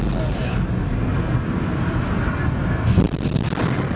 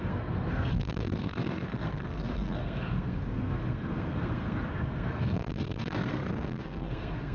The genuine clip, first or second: first